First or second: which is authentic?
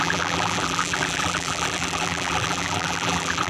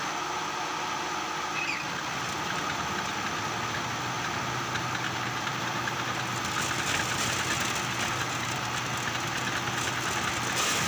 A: second